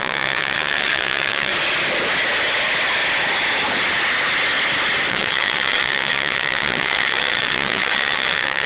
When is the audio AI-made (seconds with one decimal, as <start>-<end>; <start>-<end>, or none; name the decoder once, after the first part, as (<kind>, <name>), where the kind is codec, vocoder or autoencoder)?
0.0-1.5 (vocoder, WaveNeXt); 5.1-8.7